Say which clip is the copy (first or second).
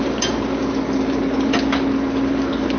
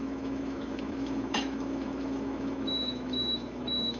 second